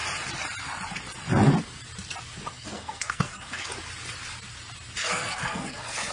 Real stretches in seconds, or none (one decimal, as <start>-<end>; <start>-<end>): 0.0-2.5; 3.7-5.0